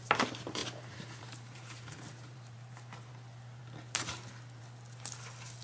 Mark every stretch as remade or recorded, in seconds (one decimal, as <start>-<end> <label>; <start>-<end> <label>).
0.0-0.6 recorded; 0.6-3.1 remade; 3.1-5.6 recorded